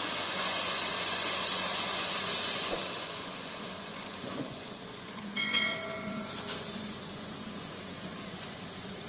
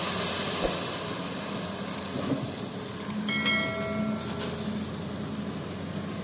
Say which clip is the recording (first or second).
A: second